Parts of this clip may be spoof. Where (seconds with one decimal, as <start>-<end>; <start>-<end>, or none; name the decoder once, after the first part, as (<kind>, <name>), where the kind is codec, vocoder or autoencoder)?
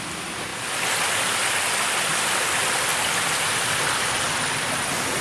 0.0-0.5 (vocoder, BigVGAN v2); 2.0-2.9; 3.8-5.2